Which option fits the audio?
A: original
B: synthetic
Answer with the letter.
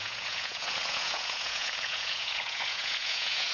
B